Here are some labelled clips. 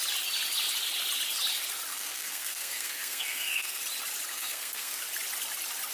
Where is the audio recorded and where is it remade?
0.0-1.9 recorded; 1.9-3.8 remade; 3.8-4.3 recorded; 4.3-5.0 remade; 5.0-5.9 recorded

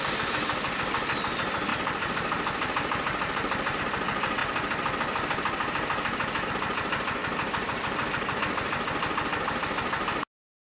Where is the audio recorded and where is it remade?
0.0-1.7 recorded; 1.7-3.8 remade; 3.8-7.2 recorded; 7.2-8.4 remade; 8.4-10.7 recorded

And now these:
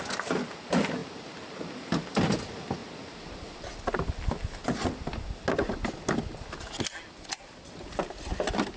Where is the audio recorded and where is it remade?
0.0-8.8 recorded

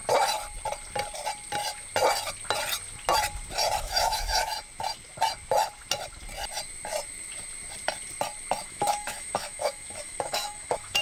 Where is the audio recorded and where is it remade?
0.0-3.8 recorded; 3.8-4.5 remade; 4.5-8.6 recorded; 8.6-11.0 remade

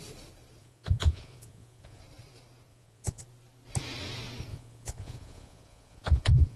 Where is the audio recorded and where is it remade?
0.0-0.6 recorded; 0.6-2.0 remade; 2.0-2.7 recorded; 2.7-3.2 remade; 3.2-4.5 recorded; 4.5-6.6 remade

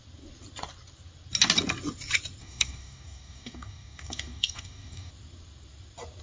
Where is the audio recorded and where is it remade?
0.0-2.4 recorded; 2.4-5.1 remade; 5.1-6.2 recorded

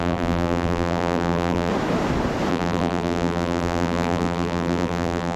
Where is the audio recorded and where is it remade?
0.0-1.7 remade; 1.7-2.5 recorded; 2.5-5.4 remade

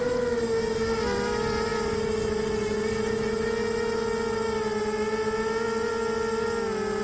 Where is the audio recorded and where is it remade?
0.0-7.0 recorded